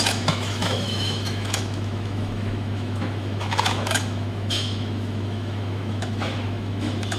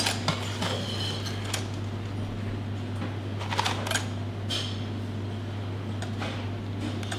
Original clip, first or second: second